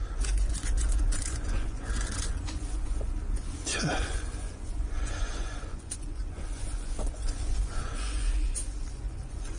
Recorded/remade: remade